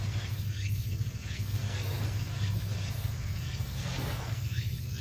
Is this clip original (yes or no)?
no